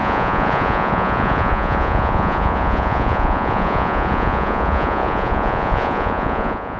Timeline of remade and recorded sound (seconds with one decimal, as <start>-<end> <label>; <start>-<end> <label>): 0.0-6.8 remade